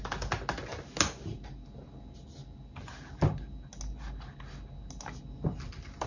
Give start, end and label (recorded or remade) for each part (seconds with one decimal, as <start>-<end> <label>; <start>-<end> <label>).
0.0-6.1 recorded